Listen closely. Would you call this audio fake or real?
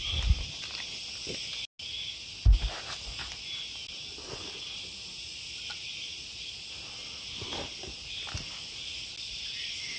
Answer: real